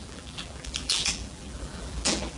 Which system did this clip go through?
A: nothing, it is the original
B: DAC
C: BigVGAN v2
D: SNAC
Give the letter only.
C